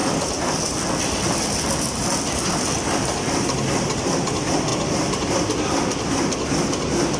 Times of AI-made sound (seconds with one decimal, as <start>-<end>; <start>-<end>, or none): none